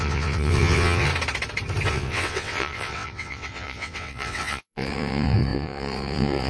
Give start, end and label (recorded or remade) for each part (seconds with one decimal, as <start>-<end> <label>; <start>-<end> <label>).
0.0-1.1 remade; 1.1-1.9 recorded; 1.9-6.5 remade